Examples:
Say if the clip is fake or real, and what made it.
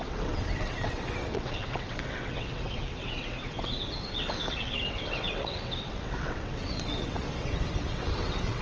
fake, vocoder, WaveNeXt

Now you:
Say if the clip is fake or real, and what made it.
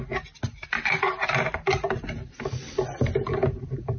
real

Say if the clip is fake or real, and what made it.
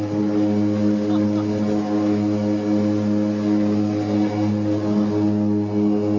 real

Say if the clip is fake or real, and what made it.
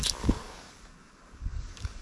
fake, codec, DAC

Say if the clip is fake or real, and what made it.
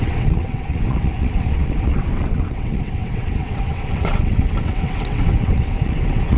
fake, vocoder, WaveNeXt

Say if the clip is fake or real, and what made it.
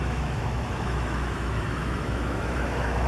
fake, autoencoder, DAC-VAE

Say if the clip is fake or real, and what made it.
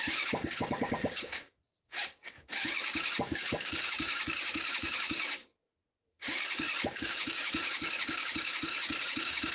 fake, codec, DAC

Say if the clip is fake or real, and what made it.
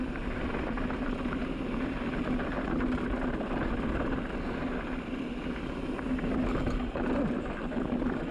real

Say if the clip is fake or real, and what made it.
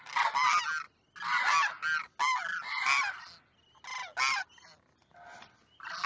real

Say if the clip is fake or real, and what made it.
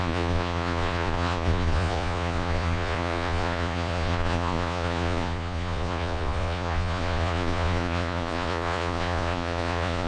fake, vocoder, Vocos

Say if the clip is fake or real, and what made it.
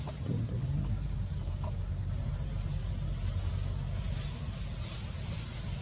real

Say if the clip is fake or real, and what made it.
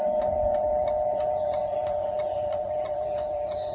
fake, vocoder, Vocos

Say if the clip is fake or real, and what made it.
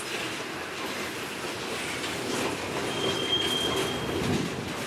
real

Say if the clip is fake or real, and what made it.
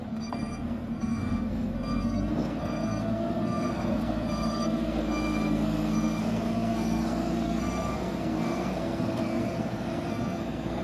fake, codec, SNAC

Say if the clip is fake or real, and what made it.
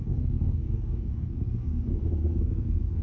fake, codec, SNAC